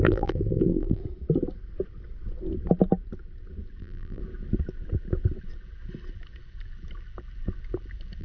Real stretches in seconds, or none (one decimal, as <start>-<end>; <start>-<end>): 1.0-3.8; 4.2-8.2